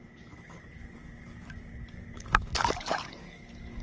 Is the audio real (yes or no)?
no